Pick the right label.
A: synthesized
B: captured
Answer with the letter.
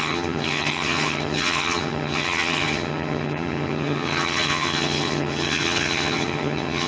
A